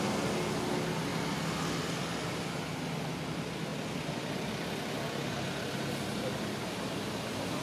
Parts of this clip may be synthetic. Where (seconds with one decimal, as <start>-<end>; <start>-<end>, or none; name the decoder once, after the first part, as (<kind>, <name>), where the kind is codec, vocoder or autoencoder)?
none